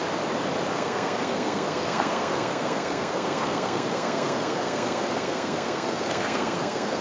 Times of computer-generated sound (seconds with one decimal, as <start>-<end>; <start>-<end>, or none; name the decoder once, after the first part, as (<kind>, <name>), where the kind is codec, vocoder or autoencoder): 0.7-7.0 (codec, SNAC)